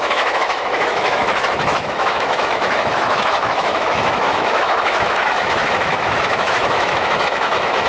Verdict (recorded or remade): remade